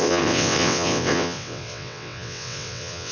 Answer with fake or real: fake